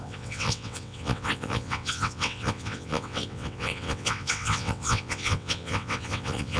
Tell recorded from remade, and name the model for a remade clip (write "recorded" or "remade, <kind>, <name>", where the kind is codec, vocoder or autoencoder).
remade, vocoder, WaveNeXt